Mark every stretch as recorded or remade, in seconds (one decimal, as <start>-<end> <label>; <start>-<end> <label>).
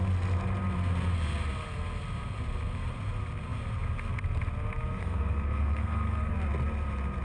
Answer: 0.0-5.0 recorded; 5.0-6.3 remade; 6.3-7.2 recorded